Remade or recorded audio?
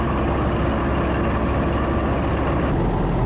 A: recorded